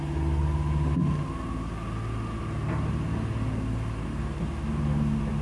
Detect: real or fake real